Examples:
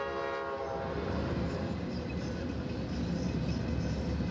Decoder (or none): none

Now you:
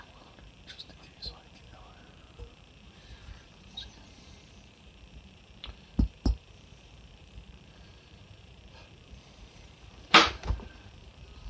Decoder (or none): vocoder, BigVGAN v2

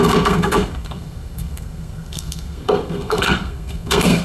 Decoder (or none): codec, SNAC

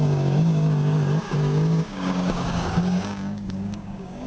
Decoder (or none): codec, DAC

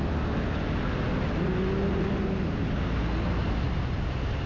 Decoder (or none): none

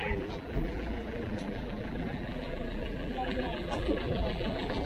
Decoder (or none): vocoder, BigVGAN v2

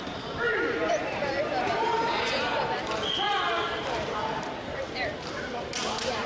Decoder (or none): vocoder, BigVGAN v2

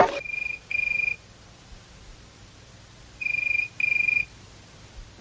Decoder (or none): none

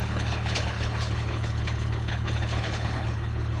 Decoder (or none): codec, HILCodec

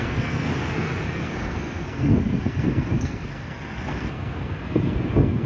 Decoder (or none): codec, SNAC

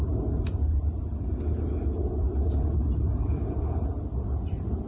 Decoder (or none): none